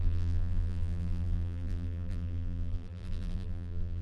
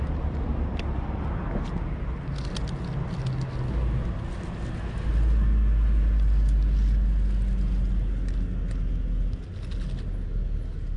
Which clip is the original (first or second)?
second